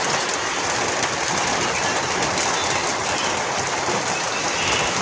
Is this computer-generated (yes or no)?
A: no